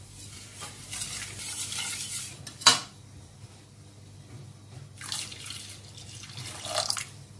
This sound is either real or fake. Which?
real